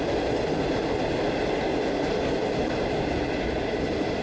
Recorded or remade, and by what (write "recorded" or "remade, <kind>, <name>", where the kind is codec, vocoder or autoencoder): recorded